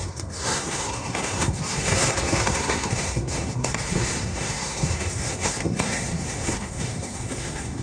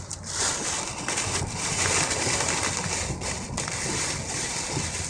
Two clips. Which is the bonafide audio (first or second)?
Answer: second